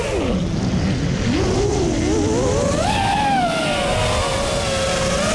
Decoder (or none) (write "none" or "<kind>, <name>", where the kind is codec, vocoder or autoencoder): none